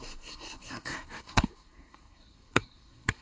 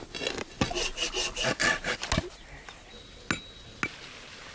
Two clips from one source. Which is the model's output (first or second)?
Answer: first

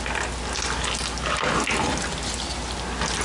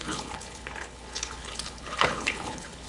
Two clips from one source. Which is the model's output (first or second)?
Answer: second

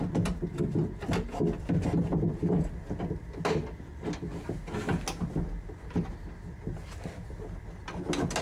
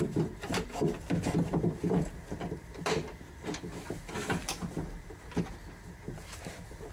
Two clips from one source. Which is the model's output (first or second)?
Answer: second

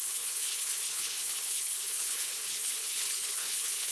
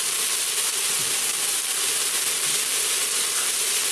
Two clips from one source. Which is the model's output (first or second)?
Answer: first